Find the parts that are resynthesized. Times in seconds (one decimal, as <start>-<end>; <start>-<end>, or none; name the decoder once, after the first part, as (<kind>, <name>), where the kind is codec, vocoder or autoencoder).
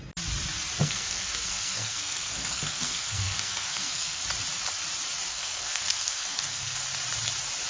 0.8-4.2 (codec, SNAC); 5.3-6.8